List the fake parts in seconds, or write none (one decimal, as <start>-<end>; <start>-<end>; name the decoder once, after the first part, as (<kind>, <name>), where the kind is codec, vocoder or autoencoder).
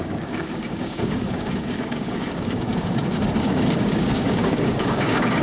0.0-5.4 (codec, DAC)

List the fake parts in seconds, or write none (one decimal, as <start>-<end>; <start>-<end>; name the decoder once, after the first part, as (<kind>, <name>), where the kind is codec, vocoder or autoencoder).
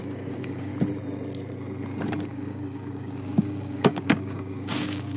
0.0-0.7 (codec, DAC); 2.2-5.2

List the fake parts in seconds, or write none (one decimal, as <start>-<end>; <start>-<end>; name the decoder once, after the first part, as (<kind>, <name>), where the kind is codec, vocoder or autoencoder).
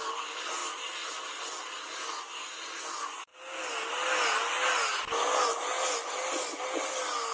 none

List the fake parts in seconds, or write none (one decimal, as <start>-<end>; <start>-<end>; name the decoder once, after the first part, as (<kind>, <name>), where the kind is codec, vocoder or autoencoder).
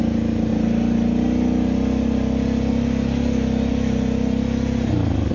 none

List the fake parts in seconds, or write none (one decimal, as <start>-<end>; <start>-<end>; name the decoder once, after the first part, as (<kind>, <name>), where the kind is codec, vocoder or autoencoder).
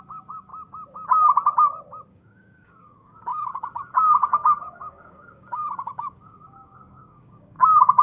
0.0-0.5 (codec, DAC); 2.1-8.0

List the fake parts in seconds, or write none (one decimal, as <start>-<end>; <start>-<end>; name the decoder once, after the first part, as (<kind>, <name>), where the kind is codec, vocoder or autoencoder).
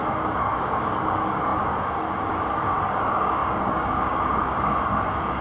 0.0-5.4 (codec, DAC)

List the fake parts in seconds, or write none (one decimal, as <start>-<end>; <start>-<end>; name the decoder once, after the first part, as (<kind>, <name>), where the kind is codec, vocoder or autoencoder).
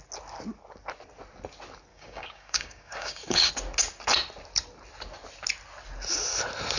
1.9-3.5 (codec, DAC)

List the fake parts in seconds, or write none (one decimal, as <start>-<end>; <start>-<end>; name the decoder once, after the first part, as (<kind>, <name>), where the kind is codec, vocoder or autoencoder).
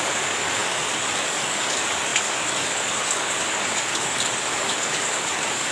0.0-5.7 (codec, DAC)